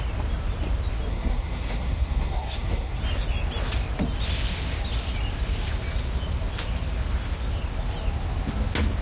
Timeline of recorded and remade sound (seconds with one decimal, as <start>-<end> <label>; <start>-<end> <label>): 0.0-1.1 recorded; 1.1-3.0 remade; 3.0-9.0 recorded